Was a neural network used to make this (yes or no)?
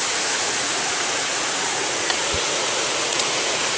yes